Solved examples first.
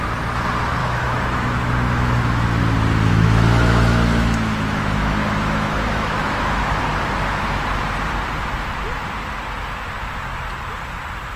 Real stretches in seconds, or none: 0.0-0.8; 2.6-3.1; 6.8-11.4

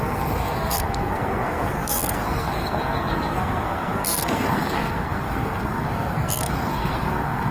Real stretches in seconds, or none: none

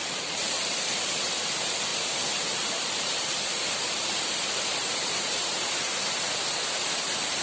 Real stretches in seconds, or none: 0.9-1.9; 6.3-7.4

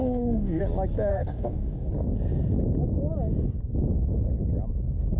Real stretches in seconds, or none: 0.6-1.1; 1.9-5.2

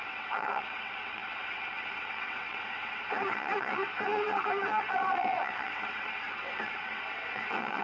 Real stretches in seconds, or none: none

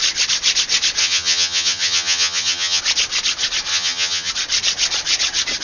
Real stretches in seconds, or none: 0.0-1.0; 2.8-3.7; 4.3-5.6

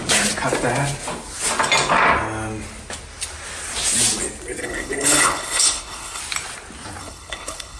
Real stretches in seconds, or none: 0.0-4.6; 6.2-7.0